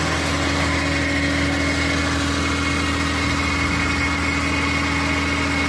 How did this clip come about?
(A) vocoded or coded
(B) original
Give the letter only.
B